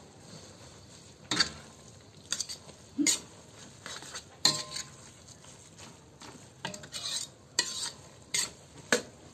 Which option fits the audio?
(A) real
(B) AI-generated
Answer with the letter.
A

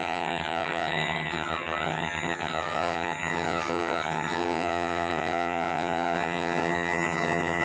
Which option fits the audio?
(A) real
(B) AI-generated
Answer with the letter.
B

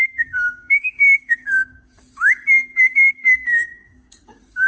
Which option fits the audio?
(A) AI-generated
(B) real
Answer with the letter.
A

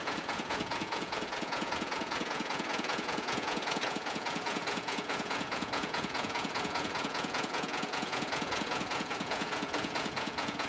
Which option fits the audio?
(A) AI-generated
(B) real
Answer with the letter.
A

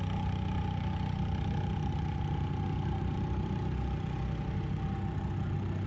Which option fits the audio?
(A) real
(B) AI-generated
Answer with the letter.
A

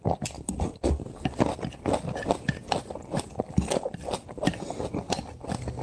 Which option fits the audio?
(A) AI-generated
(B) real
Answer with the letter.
B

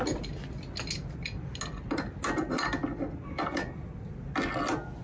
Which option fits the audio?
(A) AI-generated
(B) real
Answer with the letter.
B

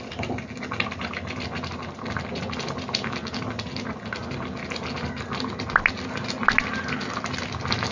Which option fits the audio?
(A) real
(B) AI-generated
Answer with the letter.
A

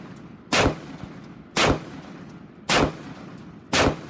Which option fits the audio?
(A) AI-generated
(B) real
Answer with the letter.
B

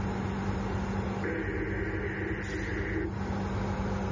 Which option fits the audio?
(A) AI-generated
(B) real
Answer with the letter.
B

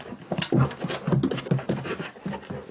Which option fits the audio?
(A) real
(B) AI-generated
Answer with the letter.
A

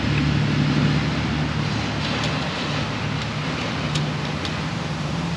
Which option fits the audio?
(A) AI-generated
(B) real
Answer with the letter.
B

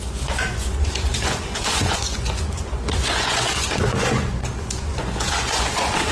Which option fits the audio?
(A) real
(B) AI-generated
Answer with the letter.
B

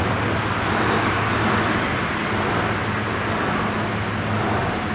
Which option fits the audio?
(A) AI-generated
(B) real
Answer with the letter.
B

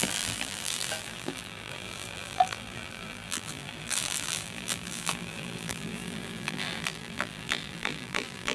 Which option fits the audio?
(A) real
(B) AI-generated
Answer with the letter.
B